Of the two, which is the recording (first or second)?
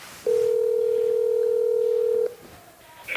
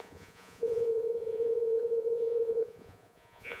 first